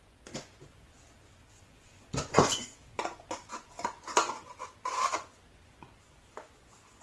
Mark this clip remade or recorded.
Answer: remade